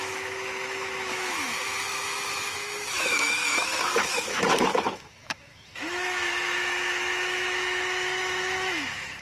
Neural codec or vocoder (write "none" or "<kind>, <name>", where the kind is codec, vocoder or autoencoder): autoencoder, DAC-VAE